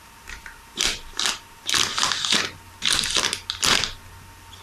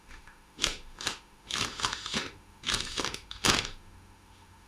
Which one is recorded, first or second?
first